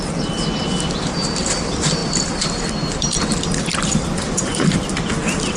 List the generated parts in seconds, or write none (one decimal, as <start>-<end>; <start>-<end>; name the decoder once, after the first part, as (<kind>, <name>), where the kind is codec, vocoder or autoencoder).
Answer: 0.0-5.6 (vocoder, BigVGAN v2)